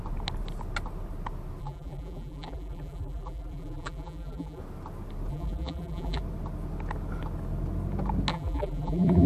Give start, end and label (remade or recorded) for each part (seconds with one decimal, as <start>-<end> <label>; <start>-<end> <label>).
0.0-1.6 recorded; 1.6-4.6 remade; 4.6-5.3 recorded; 5.3-6.2 remade; 6.2-8.3 recorded; 8.3-9.3 remade